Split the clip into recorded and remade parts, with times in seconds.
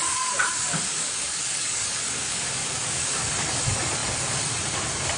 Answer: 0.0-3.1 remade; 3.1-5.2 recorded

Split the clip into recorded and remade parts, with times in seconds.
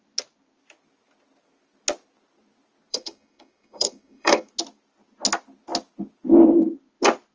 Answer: 0.0-2.9 recorded; 2.9-4.5 remade; 4.5-7.3 recorded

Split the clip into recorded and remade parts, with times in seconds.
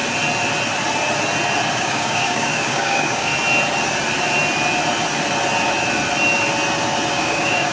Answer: 0.0-1.7 recorded; 1.7-3.3 remade; 3.3-7.1 recorded; 7.1-7.7 remade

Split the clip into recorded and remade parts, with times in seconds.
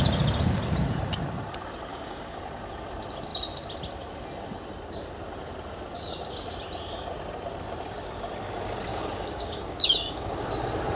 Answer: 0.0-1.9 recorded; 1.9-2.4 remade; 2.4-8.9 recorded; 8.9-10.5 remade; 10.5-11.0 recorded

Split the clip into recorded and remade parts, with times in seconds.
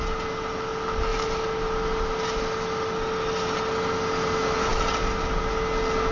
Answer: 0.0-6.1 recorded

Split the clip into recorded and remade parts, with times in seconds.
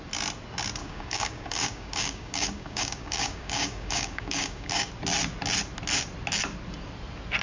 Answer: 0.0-0.8 recorded; 0.8-4.9 remade; 4.9-7.4 recorded